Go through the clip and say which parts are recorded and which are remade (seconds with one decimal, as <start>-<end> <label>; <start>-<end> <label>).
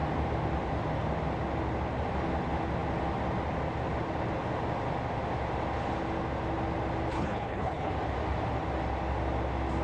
0.0-7.1 recorded; 7.1-7.9 remade; 7.9-9.8 recorded